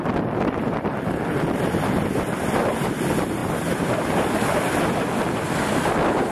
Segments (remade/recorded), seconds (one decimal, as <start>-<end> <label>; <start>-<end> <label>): 0.0-3.4 remade; 3.4-4.8 recorded; 4.8-6.3 remade

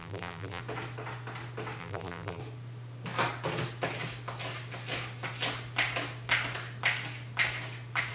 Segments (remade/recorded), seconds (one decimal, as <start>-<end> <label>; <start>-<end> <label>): 0.0-0.6 remade; 0.6-1.8 recorded; 1.8-2.4 remade; 2.4-8.1 recorded

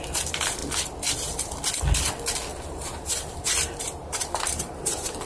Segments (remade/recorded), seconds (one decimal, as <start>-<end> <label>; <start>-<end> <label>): 0.0-2.5 recorded; 2.5-5.3 remade

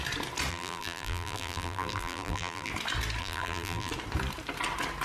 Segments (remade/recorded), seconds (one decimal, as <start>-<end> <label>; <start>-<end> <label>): 0.0-0.5 recorded; 0.5-2.7 remade; 2.7-3.2 recorded; 3.2-3.9 remade; 3.9-5.0 recorded

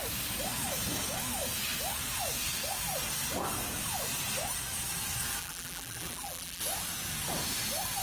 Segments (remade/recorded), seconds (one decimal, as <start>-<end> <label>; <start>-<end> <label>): 0.0-5.4 recorded; 5.4-6.6 remade; 6.6-8.0 recorded

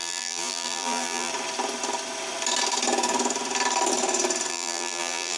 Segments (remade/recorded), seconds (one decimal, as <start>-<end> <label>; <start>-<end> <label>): 0.0-1.3 remade; 1.3-4.5 recorded; 4.5-5.4 remade

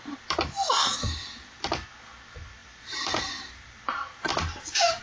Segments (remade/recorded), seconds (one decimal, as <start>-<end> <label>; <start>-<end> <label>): 0.0-2.6 recorded; 2.6-3.3 remade; 3.3-4.3 recorded; 4.3-5.0 remade

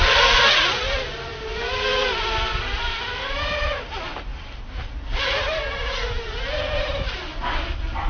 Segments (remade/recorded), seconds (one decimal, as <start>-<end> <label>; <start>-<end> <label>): 0.0-8.1 recorded